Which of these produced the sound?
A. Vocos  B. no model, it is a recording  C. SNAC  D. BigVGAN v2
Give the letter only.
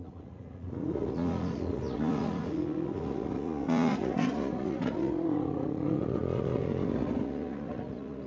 A